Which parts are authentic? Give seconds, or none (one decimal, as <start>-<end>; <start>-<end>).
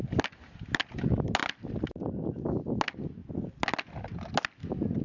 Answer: 0.0-5.0